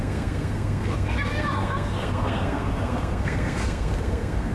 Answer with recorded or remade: remade